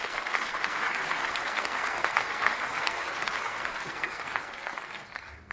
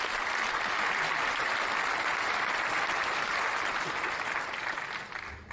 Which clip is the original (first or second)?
second